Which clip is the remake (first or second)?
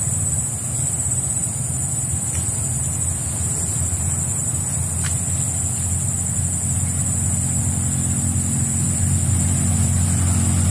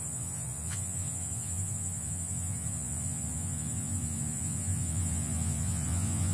second